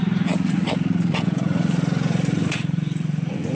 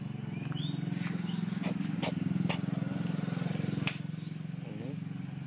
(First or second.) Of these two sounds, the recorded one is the second